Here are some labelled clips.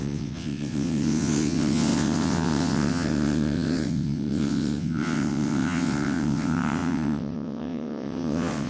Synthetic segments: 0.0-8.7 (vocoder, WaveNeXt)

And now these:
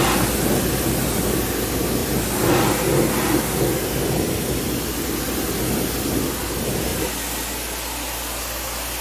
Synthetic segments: none

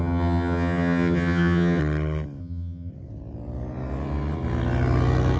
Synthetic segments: 0.0-1.8 (vocoder, HiFi-GAN); 2.4-2.9

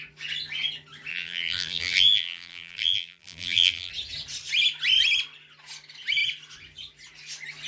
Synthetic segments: 1.1-3.9 (vocoder, BigVGAN v2)

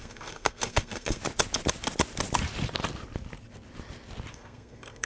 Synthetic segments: 0.0-1.2 (codec, SNAC); 4.3-5.1